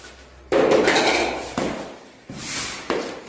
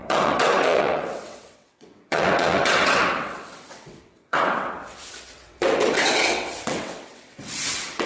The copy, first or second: second